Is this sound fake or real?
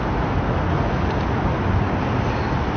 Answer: real